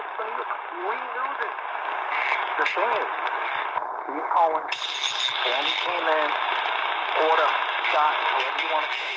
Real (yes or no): yes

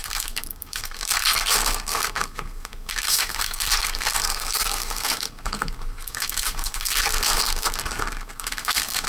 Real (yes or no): no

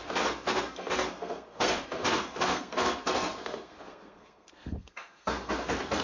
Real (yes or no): no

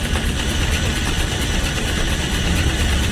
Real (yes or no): no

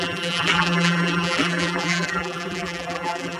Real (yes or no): no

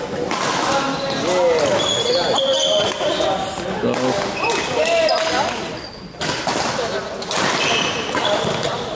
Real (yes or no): yes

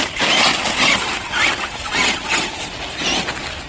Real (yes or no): yes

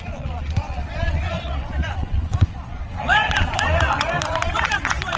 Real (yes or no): no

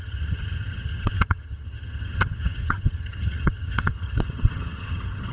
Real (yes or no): no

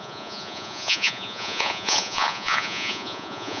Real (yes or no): no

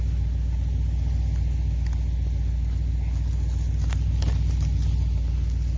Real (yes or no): yes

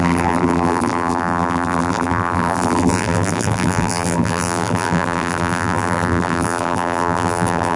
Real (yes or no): no